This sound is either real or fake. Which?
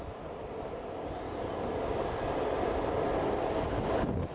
real